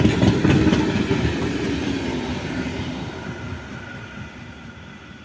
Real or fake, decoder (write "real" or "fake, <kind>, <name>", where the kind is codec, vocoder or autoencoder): real